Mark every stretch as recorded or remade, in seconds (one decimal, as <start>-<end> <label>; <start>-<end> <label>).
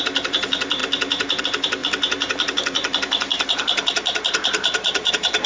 0.0-5.5 remade